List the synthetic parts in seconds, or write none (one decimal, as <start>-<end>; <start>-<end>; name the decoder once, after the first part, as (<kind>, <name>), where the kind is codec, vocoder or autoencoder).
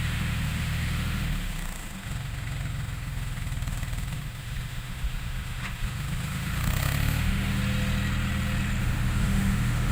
0.0-7.6 (autoencoder, DAC-VAE); 8.8-9.9